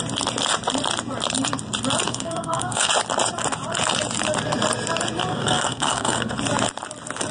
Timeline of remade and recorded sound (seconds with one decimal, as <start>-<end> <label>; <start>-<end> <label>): 0.0-2.1 recorded; 2.1-2.9 remade; 2.9-5.3 recorded; 5.3-6.4 remade; 6.4-7.3 recorded